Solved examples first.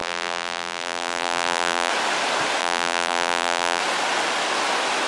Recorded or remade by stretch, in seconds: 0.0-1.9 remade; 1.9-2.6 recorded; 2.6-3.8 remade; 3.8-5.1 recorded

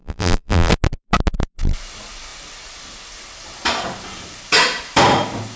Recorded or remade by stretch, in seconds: 0.0-0.7 remade; 0.7-5.6 recorded

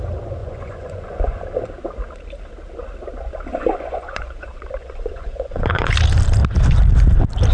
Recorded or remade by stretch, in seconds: 0.0-0.4 recorded; 0.4-1.4 remade; 1.4-3.5 recorded; 3.5-5.9 remade; 5.9-7.5 recorded

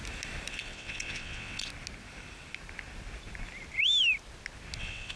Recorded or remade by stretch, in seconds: 0.0-0.5 recorded; 0.5-1.7 remade; 1.7-4.8 recorded; 4.8-5.2 remade

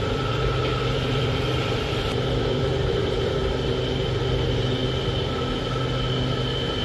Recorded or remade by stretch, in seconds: 0.0-4.8 remade; 4.8-6.8 recorded